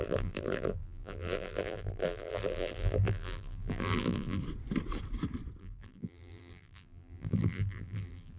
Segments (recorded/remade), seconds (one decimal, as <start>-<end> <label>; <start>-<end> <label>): 0.0-4.4 remade; 4.4-5.6 recorded; 5.6-8.4 remade